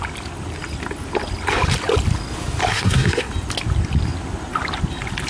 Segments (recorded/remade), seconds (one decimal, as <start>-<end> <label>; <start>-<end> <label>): 0.0-2.7 recorded; 2.7-3.3 remade; 3.3-5.3 recorded